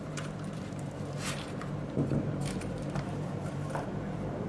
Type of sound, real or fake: fake